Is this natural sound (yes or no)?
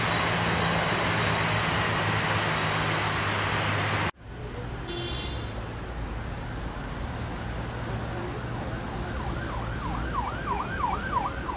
yes